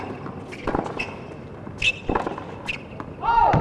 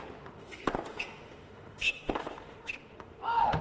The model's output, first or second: second